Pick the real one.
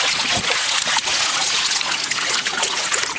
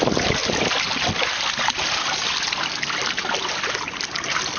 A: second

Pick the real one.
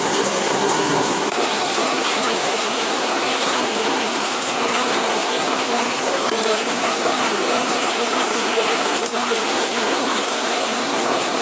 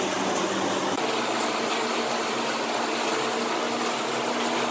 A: second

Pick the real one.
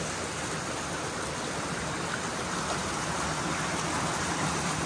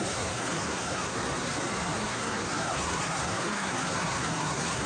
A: first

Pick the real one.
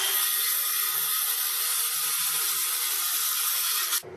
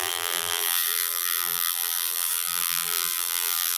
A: first